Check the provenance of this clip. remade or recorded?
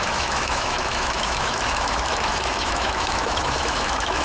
remade